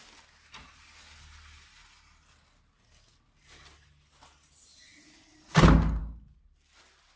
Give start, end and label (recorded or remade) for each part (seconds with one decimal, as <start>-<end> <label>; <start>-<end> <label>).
0.0-7.2 recorded